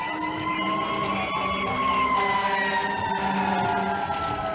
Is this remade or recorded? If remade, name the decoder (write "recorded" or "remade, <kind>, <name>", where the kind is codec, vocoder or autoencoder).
recorded